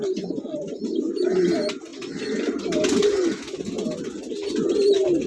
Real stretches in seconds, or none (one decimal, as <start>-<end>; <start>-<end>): 0.0-5.3